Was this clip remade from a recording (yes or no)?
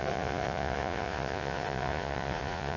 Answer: yes